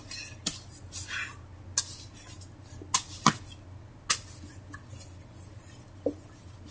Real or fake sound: real